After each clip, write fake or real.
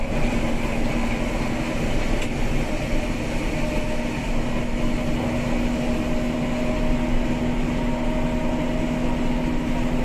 real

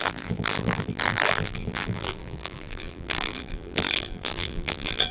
fake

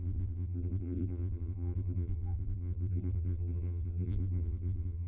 fake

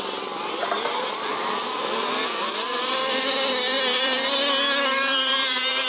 fake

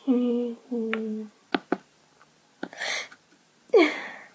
real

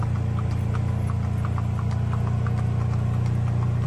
real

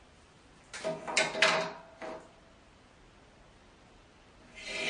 real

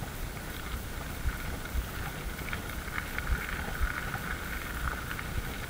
real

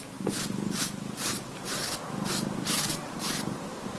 fake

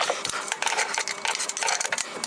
real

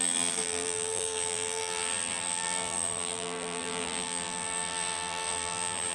fake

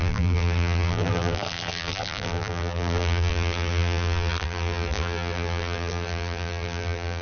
fake